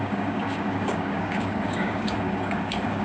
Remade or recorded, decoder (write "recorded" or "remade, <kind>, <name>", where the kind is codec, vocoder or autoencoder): remade, codec, DAC